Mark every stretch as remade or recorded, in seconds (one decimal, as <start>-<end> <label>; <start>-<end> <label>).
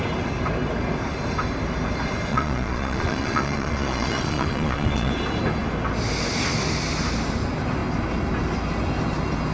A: 0.0-2.3 recorded; 2.3-5.1 remade; 5.1-9.5 recorded